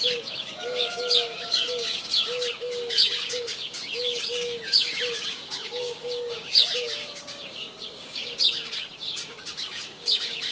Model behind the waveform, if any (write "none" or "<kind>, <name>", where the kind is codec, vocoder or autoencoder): codec, DAC